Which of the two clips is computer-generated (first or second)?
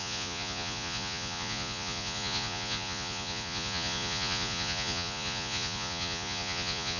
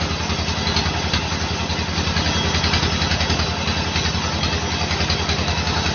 first